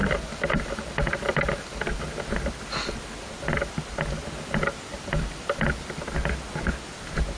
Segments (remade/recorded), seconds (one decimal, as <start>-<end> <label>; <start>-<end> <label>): 0.0-2.0 remade; 2.0-4.9 recorded; 4.9-6.0 remade; 6.0-7.4 recorded